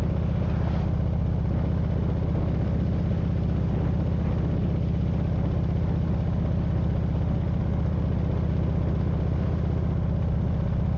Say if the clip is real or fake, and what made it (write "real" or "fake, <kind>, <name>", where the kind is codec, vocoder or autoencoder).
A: real